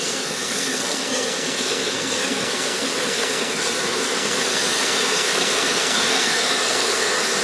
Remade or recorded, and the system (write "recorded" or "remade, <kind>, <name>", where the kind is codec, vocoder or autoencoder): remade, codec, SNAC